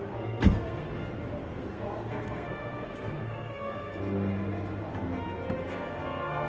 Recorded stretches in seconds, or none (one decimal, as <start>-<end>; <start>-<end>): 0.9-1.4; 4.0-5.7